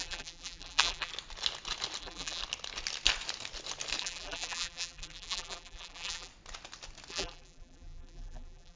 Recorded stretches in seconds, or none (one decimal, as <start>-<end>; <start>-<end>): 1.1-2.0; 2.4-4.0; 6.3-7.1